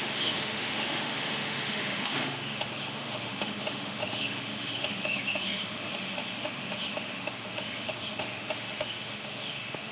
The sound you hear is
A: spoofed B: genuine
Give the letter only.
A